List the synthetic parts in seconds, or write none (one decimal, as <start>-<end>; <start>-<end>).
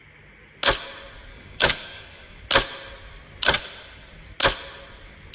1.3-2.4